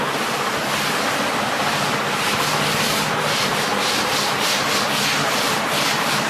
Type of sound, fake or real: real